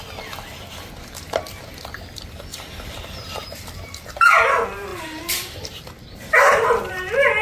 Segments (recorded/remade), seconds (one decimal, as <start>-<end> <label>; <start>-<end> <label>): 0.0-2.5 recorded; 2.5-3.6 remade; 3.6-4.9 recorded; 4.9-6.9 remade; 6.9-7.4 recorded